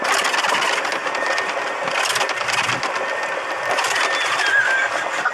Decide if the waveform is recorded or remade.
recorded